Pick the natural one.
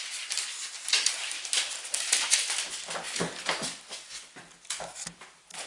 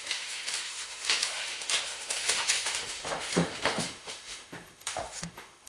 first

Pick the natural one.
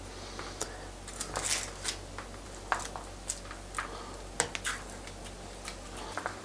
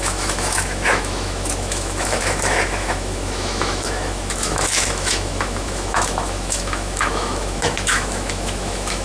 first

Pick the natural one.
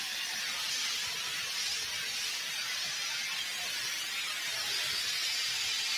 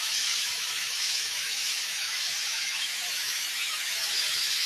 first